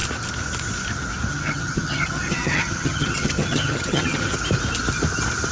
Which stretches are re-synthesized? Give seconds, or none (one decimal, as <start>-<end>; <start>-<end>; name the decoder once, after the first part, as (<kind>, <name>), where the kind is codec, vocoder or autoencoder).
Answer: 1.3-4.3 (vocoder, HiFi-GAN)